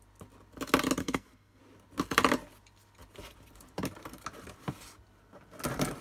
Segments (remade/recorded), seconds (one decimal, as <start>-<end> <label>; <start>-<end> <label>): 0.0-1.0 recorded; 1.0-1.6 remade; 1.6-6.0 recorded